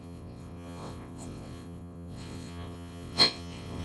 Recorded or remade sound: remade